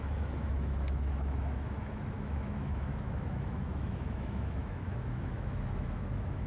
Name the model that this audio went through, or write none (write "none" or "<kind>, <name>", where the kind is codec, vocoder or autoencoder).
autoencoder, DAC-VAE